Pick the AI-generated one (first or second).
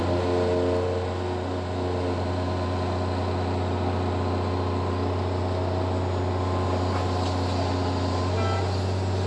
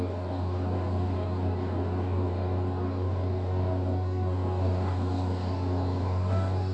second